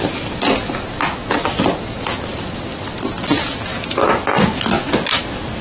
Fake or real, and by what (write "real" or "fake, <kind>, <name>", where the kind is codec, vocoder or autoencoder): real